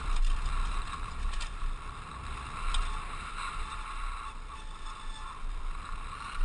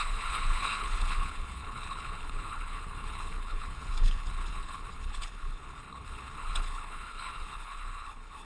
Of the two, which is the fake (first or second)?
second